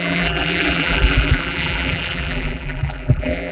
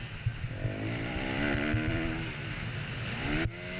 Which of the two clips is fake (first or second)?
first